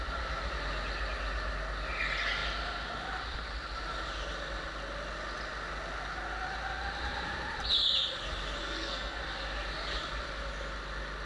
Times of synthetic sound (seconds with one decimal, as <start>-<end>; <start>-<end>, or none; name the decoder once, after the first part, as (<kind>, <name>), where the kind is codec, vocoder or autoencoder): 8.6-9.2 (codec, SNAC)